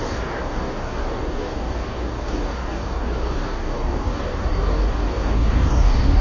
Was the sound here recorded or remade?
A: remade